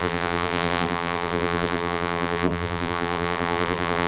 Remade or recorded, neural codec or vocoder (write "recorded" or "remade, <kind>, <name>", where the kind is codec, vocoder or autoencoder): remade, vocoder, BigVGAN v2